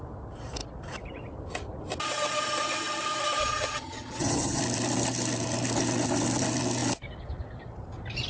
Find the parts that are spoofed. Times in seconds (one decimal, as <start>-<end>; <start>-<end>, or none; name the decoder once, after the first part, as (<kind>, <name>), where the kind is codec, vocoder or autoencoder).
3.4-4.6 (vocoder, HiFi-GAN)